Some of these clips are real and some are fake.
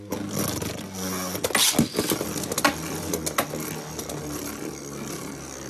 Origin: real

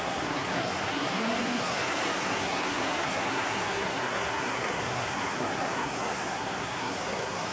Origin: fake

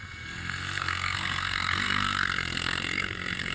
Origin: fake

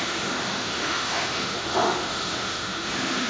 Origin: fake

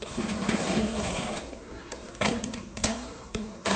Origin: fake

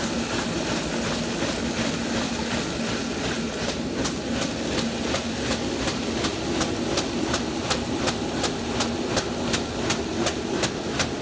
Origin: real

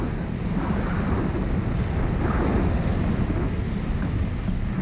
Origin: real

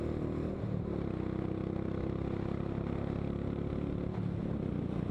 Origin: real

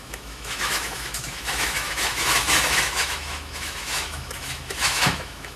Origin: fake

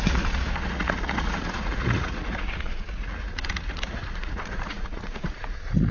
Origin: fake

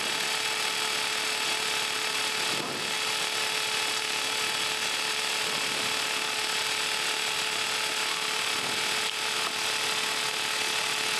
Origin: real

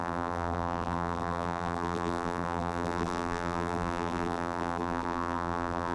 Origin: fake